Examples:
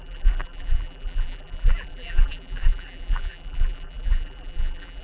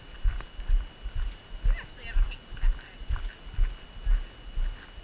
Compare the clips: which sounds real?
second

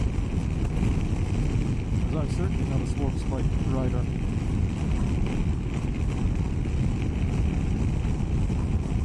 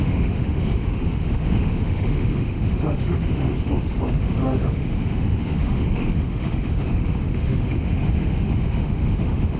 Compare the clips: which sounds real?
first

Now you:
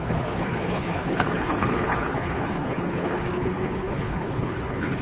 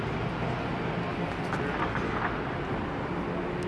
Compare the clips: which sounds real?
second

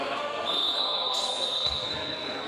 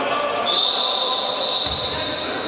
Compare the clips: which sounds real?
second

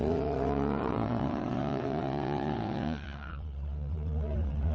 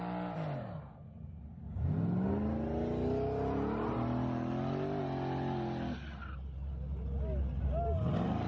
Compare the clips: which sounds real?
second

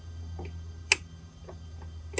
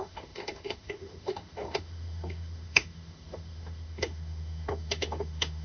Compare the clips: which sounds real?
first